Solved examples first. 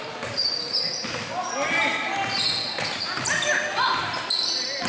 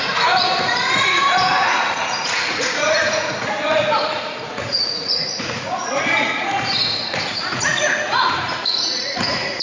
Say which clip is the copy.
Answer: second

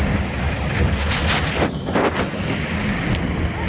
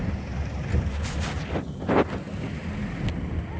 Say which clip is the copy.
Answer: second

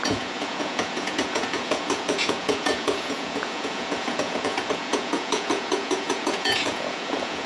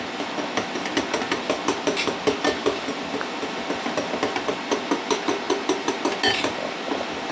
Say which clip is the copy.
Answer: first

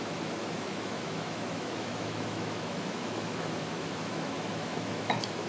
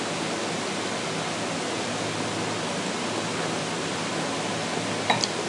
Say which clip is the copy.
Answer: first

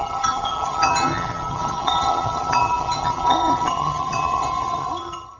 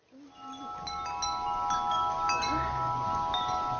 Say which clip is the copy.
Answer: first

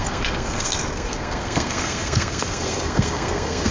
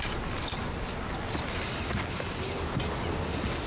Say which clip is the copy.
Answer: first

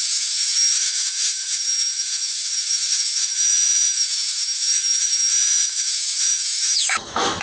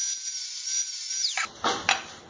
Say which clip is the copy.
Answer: first